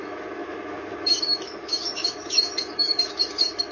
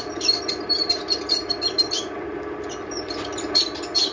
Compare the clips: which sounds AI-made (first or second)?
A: first